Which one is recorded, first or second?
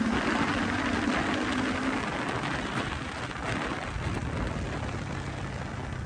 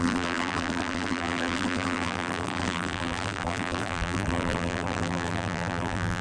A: first